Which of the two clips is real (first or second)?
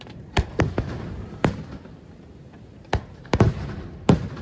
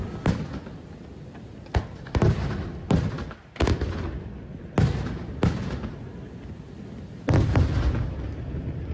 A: second